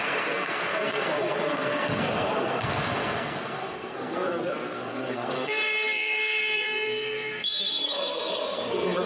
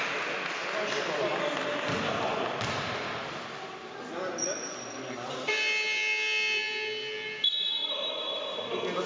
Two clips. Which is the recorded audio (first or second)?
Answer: second